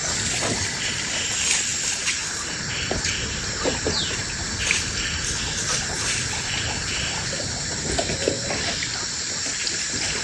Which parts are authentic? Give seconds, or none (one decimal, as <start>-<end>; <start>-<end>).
none